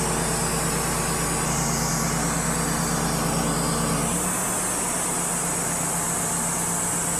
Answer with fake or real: real